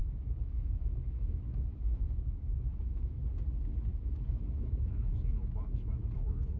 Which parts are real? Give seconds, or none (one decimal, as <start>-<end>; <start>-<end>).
3.2-3.9